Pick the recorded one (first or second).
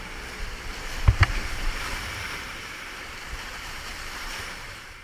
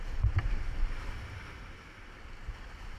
second